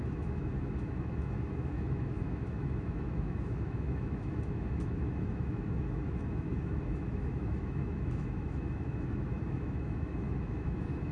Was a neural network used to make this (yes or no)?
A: yes